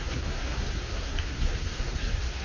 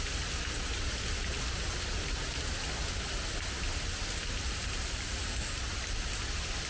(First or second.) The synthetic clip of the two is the first